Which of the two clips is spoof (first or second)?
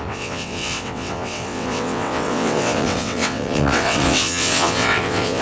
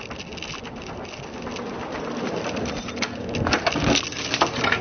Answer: first